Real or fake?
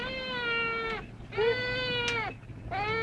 real